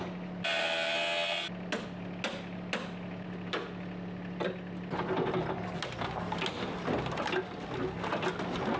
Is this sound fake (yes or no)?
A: no